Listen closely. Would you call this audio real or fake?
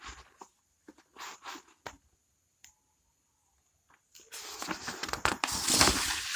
real